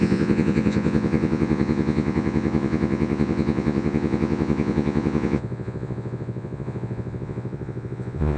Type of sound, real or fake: fake